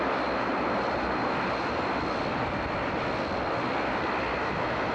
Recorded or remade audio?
recorded